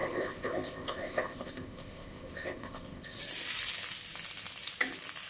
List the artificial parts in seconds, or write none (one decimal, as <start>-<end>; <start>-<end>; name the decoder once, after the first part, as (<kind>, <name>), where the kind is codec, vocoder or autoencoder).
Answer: 0.0-3.2 (codec, ZipCodec)